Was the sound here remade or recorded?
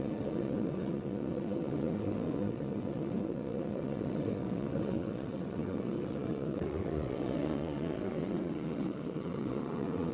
remade